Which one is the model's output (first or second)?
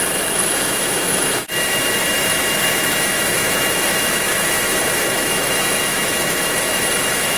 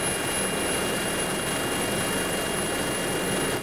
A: first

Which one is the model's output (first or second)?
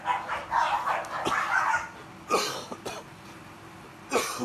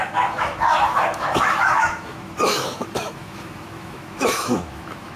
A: second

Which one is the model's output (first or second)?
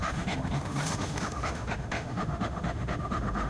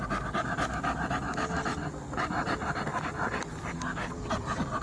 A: first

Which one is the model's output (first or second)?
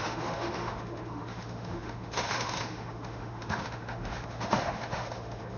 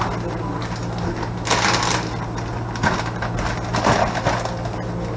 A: first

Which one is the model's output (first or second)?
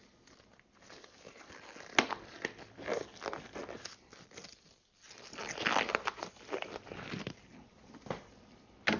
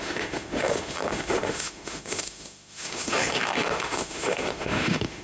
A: second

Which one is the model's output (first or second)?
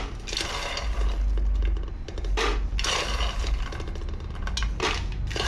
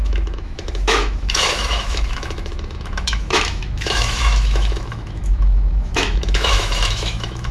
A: second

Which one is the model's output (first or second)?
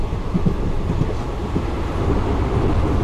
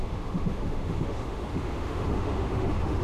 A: second